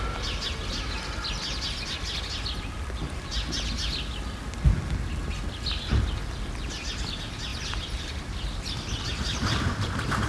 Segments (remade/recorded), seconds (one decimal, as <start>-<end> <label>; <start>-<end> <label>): 0.0-7.5 recorded; 7.5-10.3 remade